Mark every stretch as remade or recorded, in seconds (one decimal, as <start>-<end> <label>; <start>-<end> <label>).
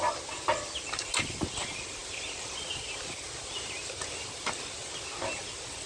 0.0-5.9 recorded